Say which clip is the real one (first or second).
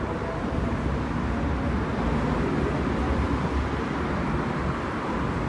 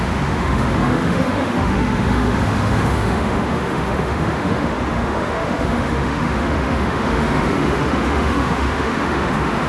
first